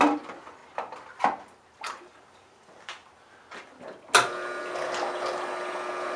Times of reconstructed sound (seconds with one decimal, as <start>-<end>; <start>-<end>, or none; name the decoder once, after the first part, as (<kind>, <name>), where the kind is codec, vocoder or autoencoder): none